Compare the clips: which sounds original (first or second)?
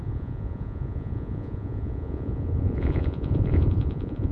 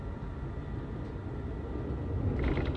second